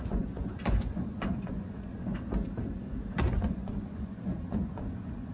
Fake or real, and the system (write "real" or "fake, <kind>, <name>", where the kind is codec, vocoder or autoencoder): fake, vocoder, Vocos